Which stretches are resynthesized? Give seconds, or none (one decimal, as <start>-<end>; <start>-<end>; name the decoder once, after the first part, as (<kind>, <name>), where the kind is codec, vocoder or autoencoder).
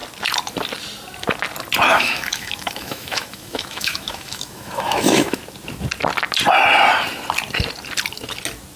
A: 1.9-5.4 (autoencoder, DAC-VAE)